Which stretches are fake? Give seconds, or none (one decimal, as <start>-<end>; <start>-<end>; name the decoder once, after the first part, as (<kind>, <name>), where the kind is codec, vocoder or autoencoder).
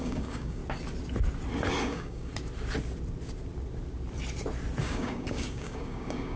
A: 0.0-0.6 (codec, DAC); 1.8-2.3; 4.8-6.4